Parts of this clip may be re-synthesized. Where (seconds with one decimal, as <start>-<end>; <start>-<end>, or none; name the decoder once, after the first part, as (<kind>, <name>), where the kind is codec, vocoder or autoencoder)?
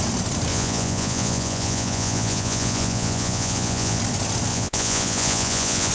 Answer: 0.5-4.0 (vocoder, Vocos); 4.5-5.9